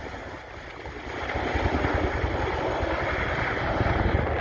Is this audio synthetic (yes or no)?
no